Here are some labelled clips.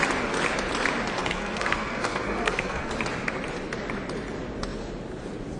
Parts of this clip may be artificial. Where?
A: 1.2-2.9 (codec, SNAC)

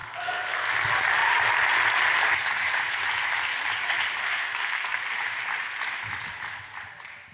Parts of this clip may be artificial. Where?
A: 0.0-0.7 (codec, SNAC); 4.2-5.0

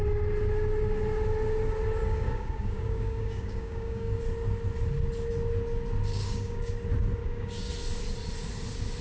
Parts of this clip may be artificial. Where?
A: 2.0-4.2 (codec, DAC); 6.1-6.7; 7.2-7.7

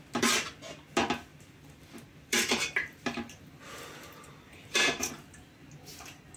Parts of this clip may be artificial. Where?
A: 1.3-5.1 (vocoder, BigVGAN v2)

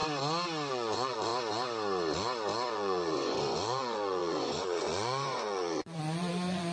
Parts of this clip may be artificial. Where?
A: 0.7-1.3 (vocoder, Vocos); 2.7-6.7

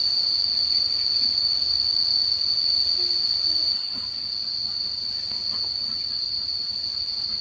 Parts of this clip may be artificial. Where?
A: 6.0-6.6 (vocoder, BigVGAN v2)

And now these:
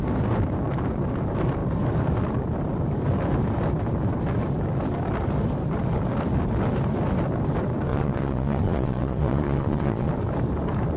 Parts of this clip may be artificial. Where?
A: 7.9-10.1 (vocoder, Vocos)